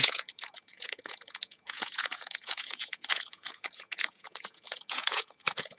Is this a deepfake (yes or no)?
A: yes